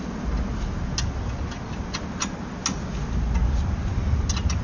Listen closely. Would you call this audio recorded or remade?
recorded